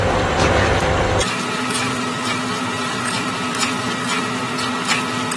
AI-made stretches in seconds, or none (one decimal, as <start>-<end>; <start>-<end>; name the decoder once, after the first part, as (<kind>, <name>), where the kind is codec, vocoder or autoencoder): 1.2-4.4 (vocoder, BigVGAN v2)